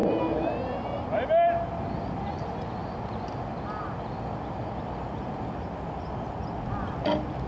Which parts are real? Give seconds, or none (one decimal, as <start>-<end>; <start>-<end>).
0.0-7.5